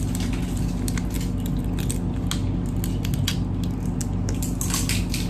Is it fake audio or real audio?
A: real